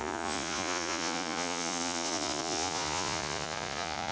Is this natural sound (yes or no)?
no